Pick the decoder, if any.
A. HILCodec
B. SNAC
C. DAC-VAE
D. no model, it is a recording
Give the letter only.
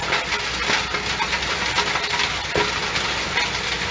D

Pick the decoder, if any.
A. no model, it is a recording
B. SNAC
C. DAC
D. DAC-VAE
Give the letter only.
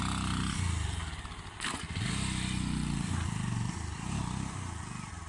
A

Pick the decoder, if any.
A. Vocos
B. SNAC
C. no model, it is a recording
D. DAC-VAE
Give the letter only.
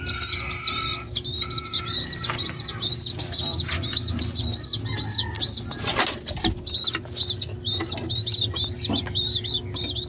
C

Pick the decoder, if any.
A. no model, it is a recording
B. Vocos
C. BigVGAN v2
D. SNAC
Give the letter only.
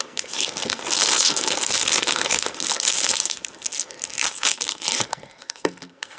D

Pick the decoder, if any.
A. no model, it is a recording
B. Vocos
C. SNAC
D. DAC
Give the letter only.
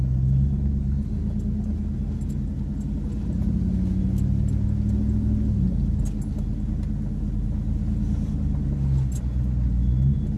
A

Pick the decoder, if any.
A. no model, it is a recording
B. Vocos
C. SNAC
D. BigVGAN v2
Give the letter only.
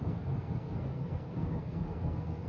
C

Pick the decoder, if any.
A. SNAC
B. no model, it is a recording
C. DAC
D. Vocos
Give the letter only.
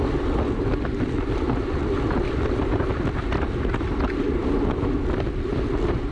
B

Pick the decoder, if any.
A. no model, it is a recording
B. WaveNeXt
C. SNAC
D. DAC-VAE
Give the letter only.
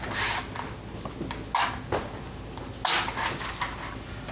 A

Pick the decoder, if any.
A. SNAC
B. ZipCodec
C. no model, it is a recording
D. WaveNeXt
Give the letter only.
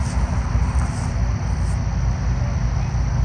C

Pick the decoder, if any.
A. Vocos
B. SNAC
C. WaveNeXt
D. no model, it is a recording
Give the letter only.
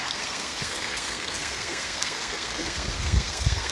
B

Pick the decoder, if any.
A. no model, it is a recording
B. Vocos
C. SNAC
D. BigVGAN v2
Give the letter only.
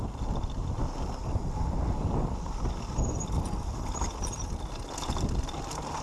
A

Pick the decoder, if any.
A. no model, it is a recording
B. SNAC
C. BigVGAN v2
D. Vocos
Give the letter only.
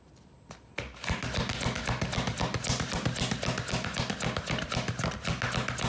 A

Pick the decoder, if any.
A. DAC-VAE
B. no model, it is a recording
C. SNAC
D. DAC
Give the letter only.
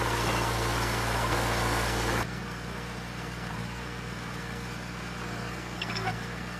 C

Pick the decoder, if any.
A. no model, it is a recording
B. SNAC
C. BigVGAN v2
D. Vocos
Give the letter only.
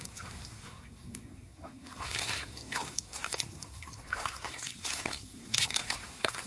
B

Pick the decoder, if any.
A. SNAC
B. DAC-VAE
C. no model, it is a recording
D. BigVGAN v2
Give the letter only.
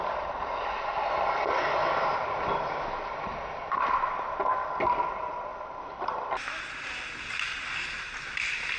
C